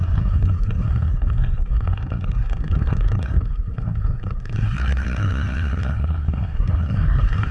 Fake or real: fake